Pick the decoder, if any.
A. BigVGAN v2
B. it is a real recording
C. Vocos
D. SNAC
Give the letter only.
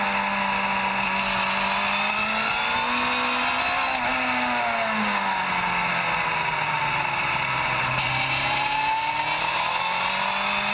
B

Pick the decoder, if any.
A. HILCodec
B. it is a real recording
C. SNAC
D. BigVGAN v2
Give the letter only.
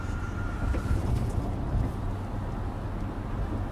B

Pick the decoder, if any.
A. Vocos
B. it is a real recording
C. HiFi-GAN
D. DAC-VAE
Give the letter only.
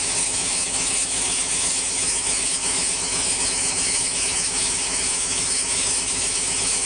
D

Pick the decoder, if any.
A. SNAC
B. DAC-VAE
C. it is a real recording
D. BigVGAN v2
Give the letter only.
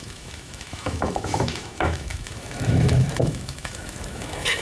B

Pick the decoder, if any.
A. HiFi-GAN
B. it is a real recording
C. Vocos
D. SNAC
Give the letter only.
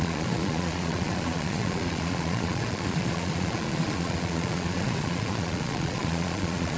C